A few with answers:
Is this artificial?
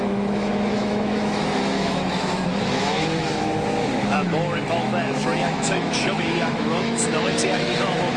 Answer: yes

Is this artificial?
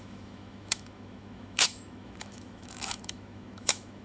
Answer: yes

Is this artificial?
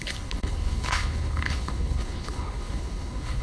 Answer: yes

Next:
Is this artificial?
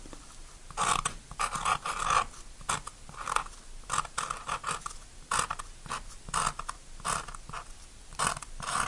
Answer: no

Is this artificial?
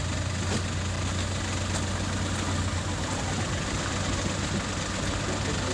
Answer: no